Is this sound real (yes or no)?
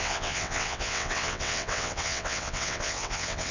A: no